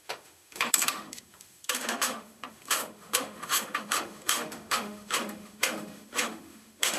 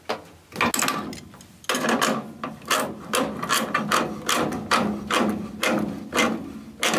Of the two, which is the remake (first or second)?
first